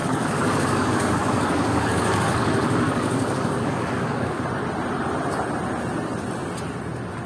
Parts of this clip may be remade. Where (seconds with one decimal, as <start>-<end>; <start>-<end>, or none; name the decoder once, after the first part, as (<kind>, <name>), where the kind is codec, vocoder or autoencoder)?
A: 0.0-4.4 (codec, DAC)